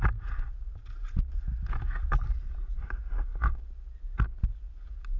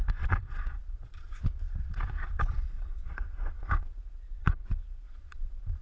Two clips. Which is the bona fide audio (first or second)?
first